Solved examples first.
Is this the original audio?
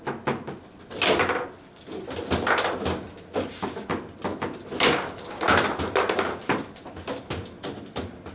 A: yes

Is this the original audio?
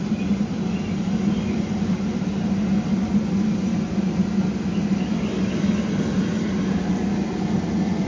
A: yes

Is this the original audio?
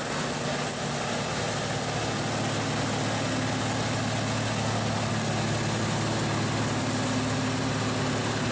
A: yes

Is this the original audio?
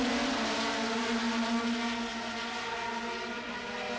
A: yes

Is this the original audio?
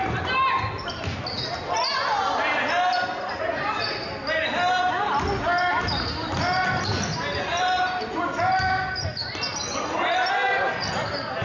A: yes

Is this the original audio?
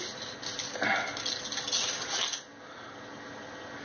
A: yes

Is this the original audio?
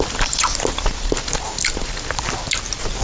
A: yes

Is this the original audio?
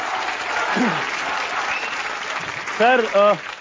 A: yes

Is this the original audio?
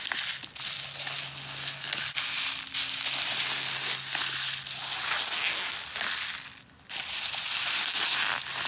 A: yes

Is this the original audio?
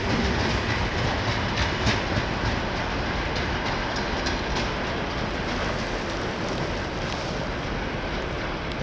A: yes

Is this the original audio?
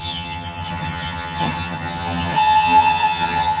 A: no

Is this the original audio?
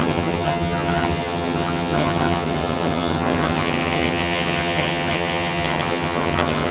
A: no